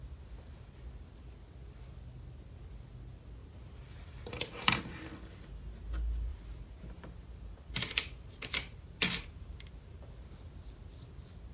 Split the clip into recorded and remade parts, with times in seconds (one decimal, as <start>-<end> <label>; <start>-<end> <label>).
0.0-3.4 recorded; 3.4-4.9 remade; 4.9-6.3 recorded; 6.3-10.3 remade; 10.3-11.5 recorded